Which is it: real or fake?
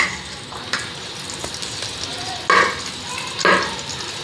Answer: real